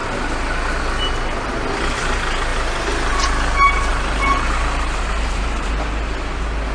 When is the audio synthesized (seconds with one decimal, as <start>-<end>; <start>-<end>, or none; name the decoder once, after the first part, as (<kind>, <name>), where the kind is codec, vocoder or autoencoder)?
3.9-5.7 (vocoder, BigVGAN v2)